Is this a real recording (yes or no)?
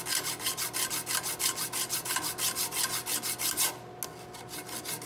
yes